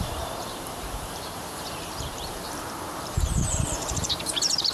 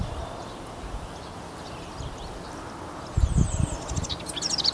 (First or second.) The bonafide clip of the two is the second